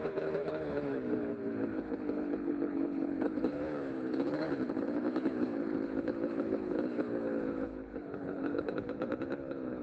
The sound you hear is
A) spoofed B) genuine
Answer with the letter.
A